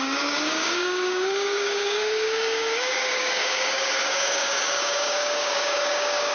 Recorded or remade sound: remade